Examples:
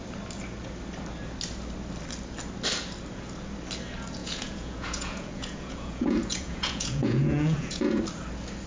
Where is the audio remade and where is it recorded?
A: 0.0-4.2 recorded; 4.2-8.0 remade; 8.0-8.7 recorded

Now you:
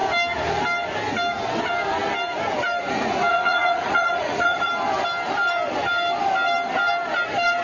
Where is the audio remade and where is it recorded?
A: 0.0-3.3 recorded; 3.3-4.7 remade; 4.7-7.6 recorded

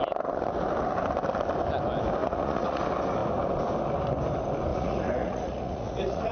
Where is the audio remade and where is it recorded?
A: 0.0-2.2 recorded; 2.2-2.8 remade; 2.8-4.7 recorded; 4.7-6.3 remade

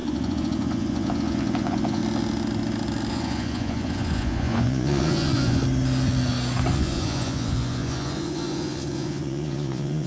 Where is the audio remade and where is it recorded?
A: 0.0-2.0 remade; 2.0-3.1 recorded; 3.1-5.6 remade; 5.6-6.7 recorded; 6.7-10.1 remade

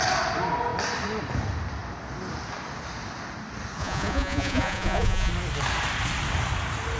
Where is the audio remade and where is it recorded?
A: 0.0-3.8 recorded; 3.8-5.3 remade; 5.3-7.0 recorded

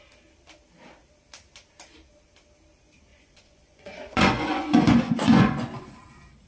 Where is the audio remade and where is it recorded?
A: 0.0-3.1 recorded; 3.1-6.0 remade; 6.0-6.5 recorded

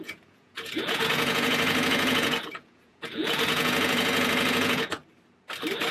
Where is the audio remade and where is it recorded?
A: 0.0-5.0 remade; 5.0-5.9 recorded

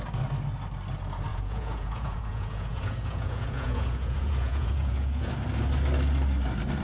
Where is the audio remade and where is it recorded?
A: 0.0-1.3 recorded; 1.3-5.3 remade; 5.3-6.8 recorded